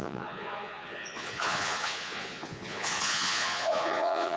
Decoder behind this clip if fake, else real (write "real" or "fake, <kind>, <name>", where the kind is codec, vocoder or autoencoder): fake, vocoder, Vocos